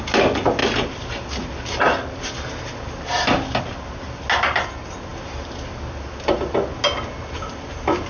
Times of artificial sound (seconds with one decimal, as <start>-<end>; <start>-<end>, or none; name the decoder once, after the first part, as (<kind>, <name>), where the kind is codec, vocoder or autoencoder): none